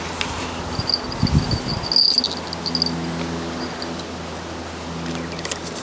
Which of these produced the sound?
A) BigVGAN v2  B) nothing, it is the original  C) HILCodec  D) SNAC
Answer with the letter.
B